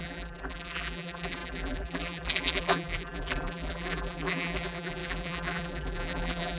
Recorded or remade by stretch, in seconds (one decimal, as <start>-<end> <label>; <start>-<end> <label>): 0.0-6.6 remade